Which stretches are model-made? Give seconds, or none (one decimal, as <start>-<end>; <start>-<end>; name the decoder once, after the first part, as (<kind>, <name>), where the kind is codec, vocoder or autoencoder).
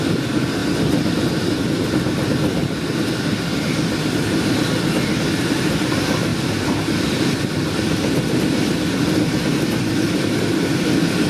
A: none